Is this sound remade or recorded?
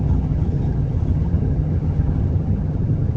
remade